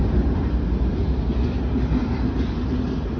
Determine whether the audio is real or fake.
real